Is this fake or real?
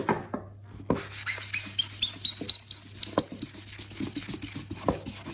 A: real